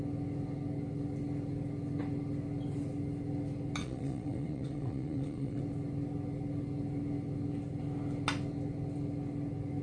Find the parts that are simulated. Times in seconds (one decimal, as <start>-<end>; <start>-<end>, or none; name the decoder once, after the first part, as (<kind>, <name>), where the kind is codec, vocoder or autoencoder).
3.8-5.6 (vocoder, Vocos)